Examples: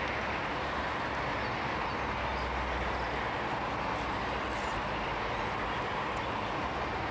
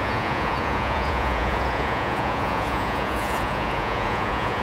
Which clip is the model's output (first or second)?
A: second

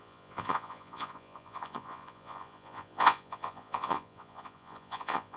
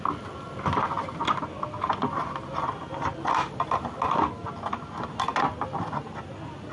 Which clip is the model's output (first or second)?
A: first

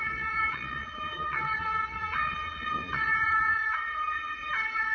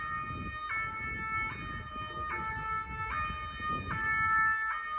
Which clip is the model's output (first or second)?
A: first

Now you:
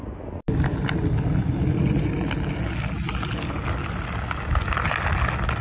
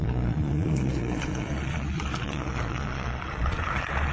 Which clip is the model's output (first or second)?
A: second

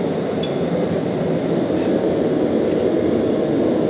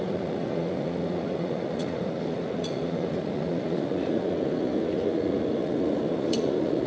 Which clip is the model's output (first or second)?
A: second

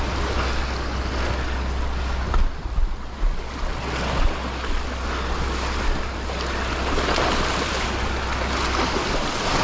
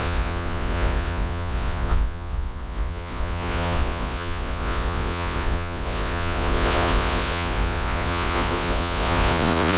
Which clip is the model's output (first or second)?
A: second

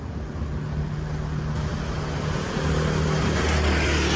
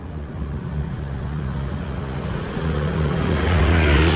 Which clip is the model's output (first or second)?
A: second